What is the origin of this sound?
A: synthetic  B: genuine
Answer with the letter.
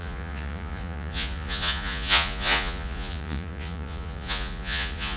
A